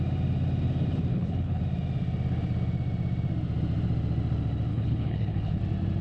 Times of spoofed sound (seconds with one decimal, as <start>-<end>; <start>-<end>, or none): 1.1-1.6; 4.7-5.6